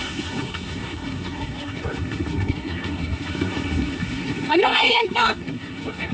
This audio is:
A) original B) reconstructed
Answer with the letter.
B